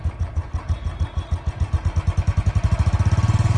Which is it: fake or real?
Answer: real